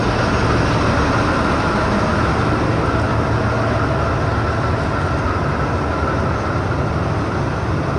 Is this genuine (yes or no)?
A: yes